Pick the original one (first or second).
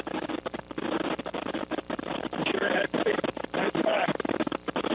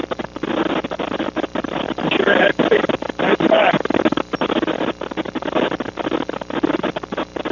second